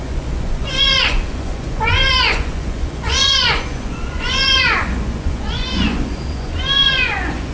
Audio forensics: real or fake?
fake